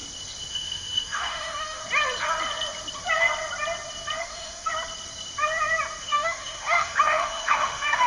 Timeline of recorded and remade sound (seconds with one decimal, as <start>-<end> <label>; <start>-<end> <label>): 0.0-0.5 recorded; 0.5-1.8 remade; 1.8-4.2 recorded; 4.2-4.7 remade; 4.7-6.0 recorded; 6.0-8.1 remade